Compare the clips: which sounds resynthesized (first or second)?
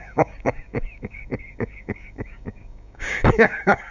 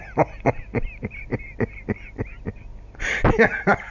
first